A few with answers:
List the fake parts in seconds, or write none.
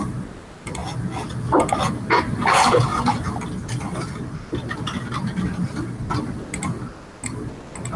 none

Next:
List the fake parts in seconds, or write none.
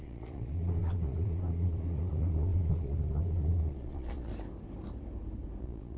0.0-4.3 (vocoder, Vocos); 5.6-6.0